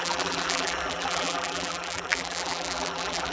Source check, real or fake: fake